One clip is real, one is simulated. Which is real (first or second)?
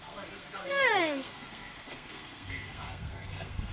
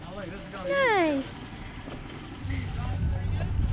second